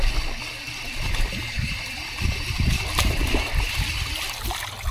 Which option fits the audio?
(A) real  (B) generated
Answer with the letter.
A